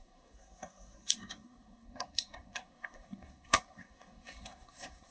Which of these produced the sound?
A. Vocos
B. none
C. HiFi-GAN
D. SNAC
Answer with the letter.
D